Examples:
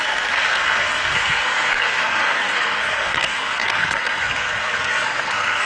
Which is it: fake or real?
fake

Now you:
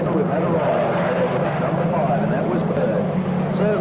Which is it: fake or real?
real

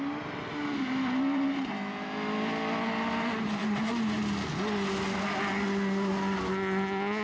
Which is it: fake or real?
real